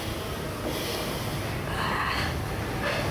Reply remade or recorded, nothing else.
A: recorded